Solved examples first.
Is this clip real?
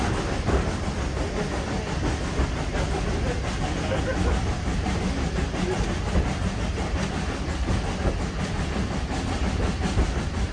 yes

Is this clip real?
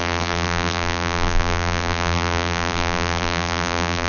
no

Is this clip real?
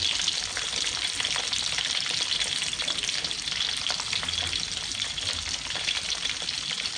yes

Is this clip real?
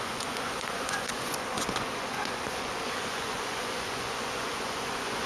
no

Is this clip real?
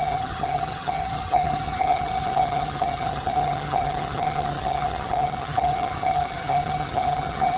no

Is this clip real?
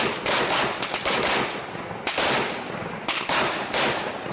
yes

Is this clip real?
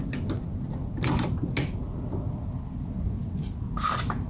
yes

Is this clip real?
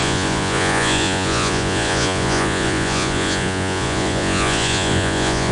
no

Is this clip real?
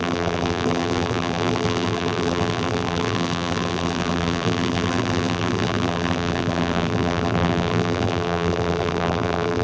no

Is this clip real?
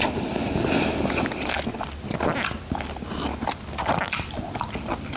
yes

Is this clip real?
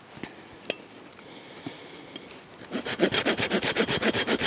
yes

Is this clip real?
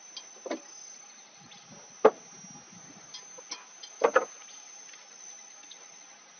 yes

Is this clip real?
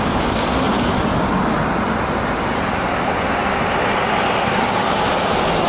yes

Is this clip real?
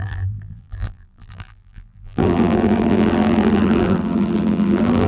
no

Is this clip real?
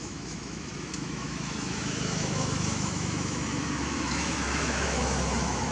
no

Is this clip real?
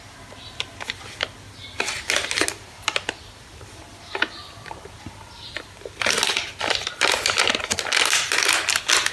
yes